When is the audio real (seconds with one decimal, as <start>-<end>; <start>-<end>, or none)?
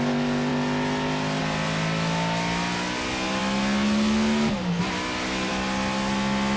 0.0-6.6